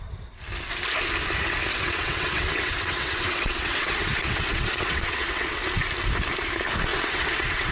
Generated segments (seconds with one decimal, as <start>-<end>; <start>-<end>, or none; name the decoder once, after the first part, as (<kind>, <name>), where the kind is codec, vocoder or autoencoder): 1.7-5.6 (vocoder, WaveNeXt); 6.9-7.7